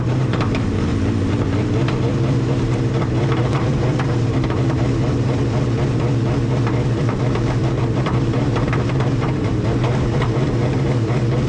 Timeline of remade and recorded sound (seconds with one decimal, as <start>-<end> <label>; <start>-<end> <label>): 0.0-0.9 remade; 0.9-2.1 recorded; 2.1-5.4 remade; 5.4-7.0 recorded; 7.0-11.5 remade